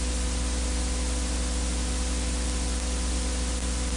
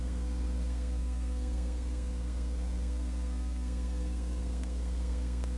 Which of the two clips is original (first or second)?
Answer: first